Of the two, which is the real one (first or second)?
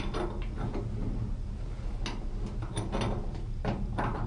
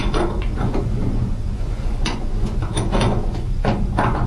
first